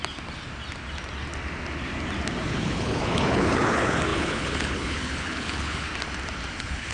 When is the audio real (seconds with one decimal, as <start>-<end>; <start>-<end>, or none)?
0.0-2.4; 5.9-6.5